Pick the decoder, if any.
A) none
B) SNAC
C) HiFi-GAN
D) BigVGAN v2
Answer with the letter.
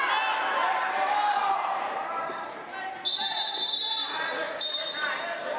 A